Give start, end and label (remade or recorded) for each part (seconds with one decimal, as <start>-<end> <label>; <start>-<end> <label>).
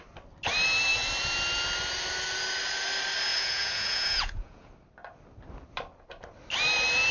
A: 0.0-3.3 recorded; 3.3-4.7 remade; 4.7-7.1 recorded